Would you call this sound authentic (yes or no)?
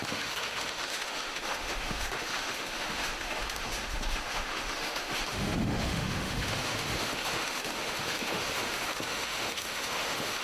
no